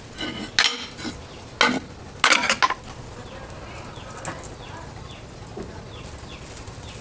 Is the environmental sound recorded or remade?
recorded